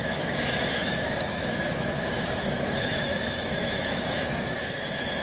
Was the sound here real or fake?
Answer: fake